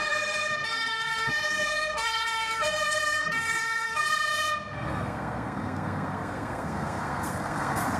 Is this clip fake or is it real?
fake